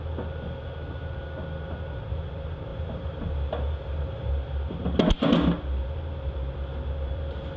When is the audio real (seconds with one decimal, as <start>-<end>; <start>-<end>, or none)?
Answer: 0.0-2.7; 4.3-7.6